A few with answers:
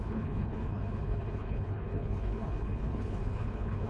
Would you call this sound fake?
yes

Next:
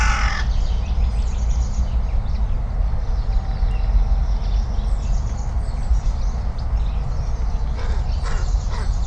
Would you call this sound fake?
no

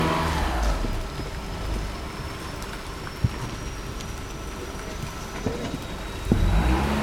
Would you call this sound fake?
no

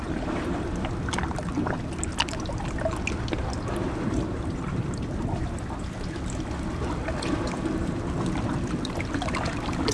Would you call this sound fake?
no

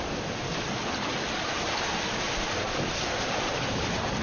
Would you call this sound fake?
no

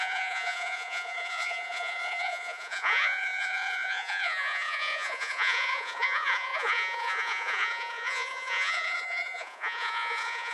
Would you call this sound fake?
yes